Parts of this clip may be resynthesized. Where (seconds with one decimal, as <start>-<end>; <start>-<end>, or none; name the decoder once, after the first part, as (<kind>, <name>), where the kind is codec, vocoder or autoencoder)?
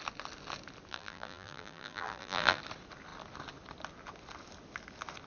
0.9-2.6 (vocoder, BigVGAN v2)